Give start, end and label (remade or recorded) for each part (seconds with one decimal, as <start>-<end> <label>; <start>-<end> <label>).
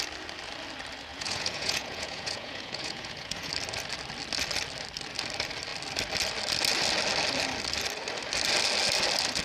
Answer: 0.0-1.1 recorded; 1.1-3.5 remade; 3.5-9.4 recorded